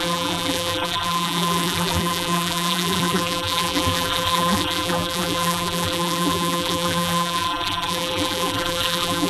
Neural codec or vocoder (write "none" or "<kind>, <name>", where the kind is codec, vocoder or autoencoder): vocoder, BigVGAN v2